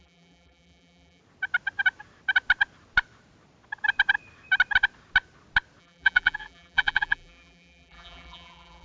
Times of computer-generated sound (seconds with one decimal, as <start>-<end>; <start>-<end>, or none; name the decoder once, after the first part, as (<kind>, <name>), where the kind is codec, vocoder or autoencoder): 0.0-1.2 (vocoder, BigVGAN v2); 5.8-8.8